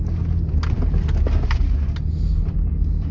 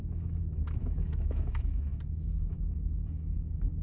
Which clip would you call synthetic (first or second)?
second